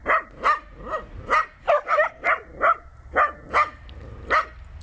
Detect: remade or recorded recorded